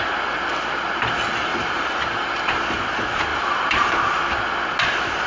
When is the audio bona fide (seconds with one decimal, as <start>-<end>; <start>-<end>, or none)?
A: 0.0-1.5; 2.6-3.3; 3.9-5.3

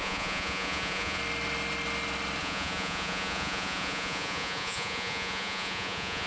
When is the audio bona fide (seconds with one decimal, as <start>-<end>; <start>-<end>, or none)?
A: 1.2-2.4